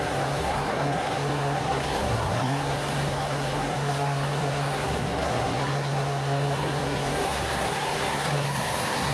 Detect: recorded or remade remade